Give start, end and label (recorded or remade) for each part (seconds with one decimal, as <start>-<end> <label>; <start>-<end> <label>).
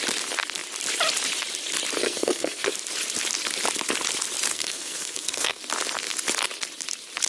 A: 0.0-2.0 recorded; 2.0-2.7 remade; 2.7-4.5 recorded; 4.5-5.6 remade; 5.6-7.3 recorded